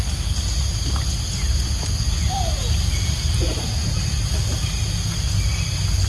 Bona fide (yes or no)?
yes